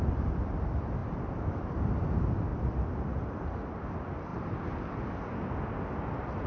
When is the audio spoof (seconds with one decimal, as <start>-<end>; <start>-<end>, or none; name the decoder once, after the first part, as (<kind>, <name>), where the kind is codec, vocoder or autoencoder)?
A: none